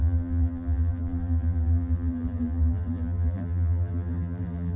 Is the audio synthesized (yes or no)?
yes